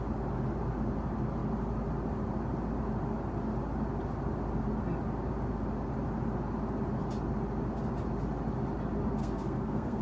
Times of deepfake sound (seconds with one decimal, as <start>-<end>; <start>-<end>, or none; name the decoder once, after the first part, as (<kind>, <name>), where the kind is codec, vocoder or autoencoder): 9.2-10.0 (codec, SNAC)